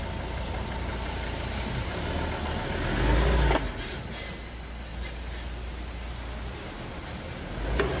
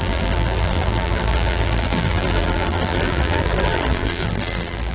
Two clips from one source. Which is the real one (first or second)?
first